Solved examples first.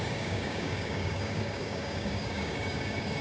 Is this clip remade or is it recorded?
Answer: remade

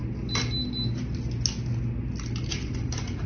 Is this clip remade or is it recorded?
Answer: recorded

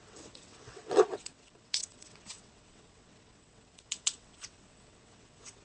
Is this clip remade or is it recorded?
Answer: remade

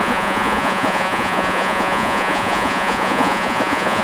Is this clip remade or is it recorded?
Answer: remade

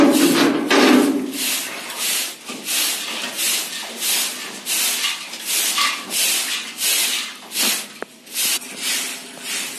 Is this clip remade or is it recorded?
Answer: recorded